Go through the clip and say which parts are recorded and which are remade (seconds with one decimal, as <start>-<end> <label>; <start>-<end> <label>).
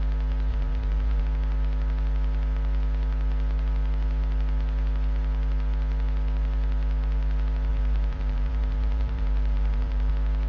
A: 0.0-0.5 recorded; 0.5-1.2 remade; 1.2-7.7 recorded; 7.7-10.1 remade; 10.1-10.5 recorded